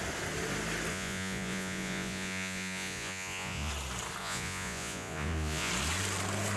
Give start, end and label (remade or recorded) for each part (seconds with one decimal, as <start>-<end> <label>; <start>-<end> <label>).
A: 0.0-0.9 recorded; 0.9-3.7 remade; 3.7-4.2 recorded; 4.2-5.7 remade; 5.7-6.6 recorded